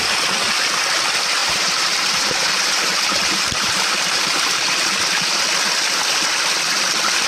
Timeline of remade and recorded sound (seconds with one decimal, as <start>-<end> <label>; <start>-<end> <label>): 0.0-1.4 recorded; 1.4-5.4 remade; 5.4-7.3 recorded